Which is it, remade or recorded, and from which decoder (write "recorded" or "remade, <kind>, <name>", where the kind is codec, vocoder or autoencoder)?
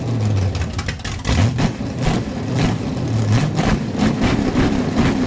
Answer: recorded